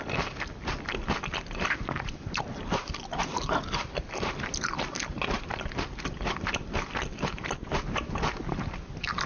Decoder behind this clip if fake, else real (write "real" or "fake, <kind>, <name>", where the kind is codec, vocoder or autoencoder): real